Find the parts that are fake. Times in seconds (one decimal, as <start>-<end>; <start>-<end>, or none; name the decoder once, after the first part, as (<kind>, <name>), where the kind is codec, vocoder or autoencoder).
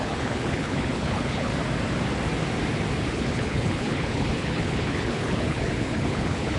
0.0-1.5 (codec, HILCodec); 3.1-6.6